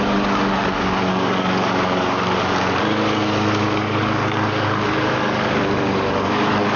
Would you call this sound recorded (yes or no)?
no